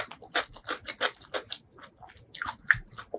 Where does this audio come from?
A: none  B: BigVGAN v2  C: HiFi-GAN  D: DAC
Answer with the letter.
A